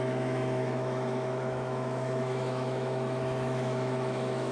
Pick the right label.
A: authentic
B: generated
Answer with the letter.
B